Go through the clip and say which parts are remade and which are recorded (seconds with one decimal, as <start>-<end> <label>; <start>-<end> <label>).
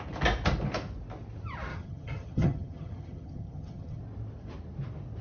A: 0.0-1.7 recorded; 1.7-4.0 remade; 4.0-5.2 recorded